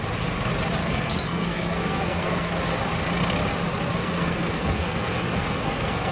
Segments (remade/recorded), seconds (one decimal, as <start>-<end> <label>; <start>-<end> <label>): 0.0-0.8 recorded; 0.8-2.5 remade; 2.5-4.0 recorded; 4.0-6.1 remade